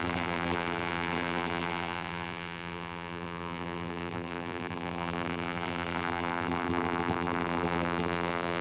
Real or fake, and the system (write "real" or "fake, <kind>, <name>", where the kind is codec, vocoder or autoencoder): fake, vocoder, BigVGAN v2